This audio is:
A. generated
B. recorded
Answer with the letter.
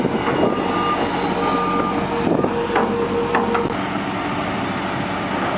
B